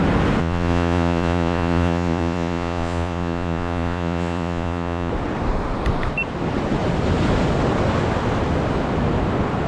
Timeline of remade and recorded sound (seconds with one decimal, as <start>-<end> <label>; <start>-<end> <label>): 0.0-0.4 recorded; 0.4-5.1 remade; 5.1-9.7 recorded

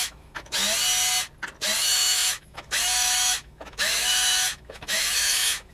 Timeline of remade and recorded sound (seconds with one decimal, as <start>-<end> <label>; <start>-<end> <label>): 0.0-0.6 remade; 0.6-1.8 recorded; 1.8-5.7 remade

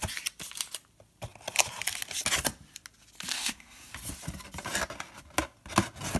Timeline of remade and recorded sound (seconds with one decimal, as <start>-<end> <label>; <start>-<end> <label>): 0.0-3.3 recorded; 3.3-3.9 remade; 3.9-6.2 recorded

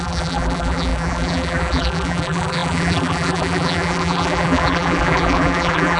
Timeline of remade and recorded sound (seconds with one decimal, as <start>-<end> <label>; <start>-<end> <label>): 0.0-6.0 remade

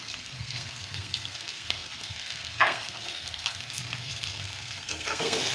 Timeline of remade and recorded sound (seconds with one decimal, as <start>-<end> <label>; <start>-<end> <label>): 0.0-5.5 remade

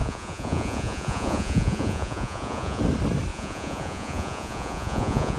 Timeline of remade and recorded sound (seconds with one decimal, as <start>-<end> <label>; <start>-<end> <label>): 0.0-2.8 remade; 2.8-3.3 recorded; 3.3-5.4 remade